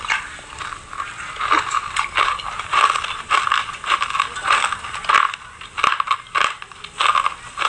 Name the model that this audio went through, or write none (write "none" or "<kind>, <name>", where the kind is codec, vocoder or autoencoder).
none